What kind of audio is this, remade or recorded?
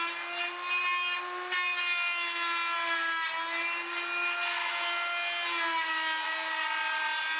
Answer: recorded